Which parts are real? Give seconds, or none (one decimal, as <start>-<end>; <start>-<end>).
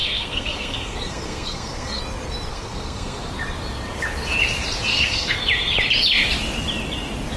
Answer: 2.0-2.5; 3.3-4.9; 5.4-7.4